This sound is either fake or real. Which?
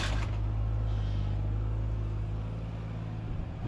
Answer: real